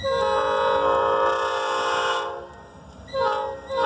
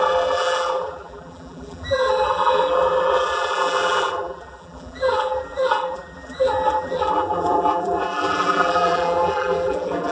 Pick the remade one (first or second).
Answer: second